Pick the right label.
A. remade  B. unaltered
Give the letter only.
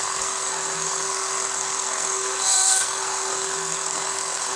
A